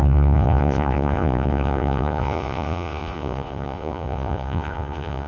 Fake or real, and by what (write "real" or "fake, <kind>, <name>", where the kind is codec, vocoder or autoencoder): fake, vocoder, Vocos